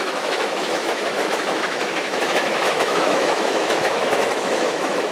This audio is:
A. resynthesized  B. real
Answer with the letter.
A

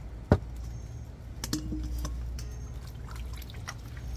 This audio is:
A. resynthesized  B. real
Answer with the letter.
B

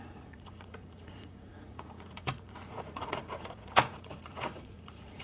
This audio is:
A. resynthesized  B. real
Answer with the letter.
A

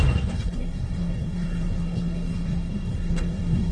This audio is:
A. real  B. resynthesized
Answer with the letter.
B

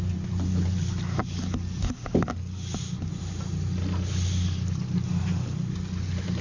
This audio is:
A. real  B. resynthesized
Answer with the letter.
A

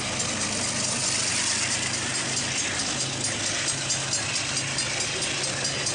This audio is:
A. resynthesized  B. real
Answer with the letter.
B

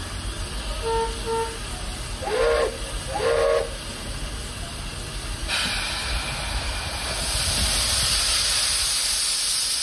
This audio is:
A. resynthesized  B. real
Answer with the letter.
B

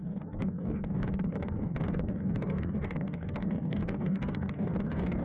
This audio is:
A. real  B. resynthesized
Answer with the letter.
B